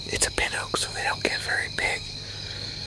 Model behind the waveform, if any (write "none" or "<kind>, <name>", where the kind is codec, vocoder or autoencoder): codec, DAC